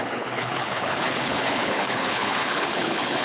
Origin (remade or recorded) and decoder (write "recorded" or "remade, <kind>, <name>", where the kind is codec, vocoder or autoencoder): remade, codec, HILCodec